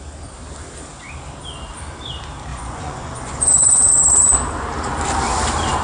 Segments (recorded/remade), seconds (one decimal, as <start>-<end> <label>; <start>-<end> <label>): 0.0-2.5 recorded; 2.5-3.9 remade; 3.9-5.8 recorded

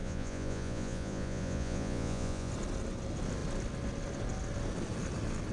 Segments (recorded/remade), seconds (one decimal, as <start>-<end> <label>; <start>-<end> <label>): 0.0-2.5 remade; 2.5-5.5 recorded

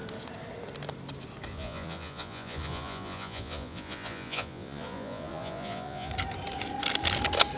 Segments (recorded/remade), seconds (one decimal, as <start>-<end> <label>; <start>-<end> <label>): 0.0-1.5 recorded; 1.5-6.1 remade; 6.1-7.6 recorded

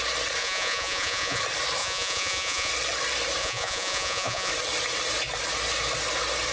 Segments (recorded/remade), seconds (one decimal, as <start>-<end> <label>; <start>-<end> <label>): 0.0-0.4 recorded; 0.4-1.4 remade; 1.4-1.8 recorded; 1.8-2.7 remade; 2.7-3.4 recorded; 3.4-4.5 remade; 4.5-6.5 recorded

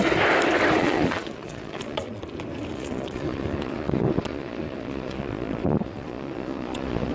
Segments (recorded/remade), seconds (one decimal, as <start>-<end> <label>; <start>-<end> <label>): 0.0-0.8 recorded; 0.8-2.2 remade; 2.2-2.7 recorded; 2.7-7.1 remade

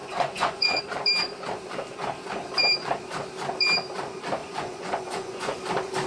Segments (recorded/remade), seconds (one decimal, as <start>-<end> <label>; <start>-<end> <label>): 0.0-0.8 remade; 0.8-4.4 recorded; 4.4-5.6 remade; 5.6-6.1 recorded

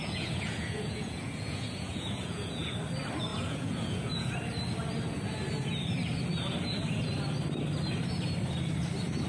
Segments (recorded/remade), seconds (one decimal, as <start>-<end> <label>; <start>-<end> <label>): 0.0-2.7 remade; 2.7-3.3 recorded; 3.3-4.3 remade; 4.3-9.3 recorded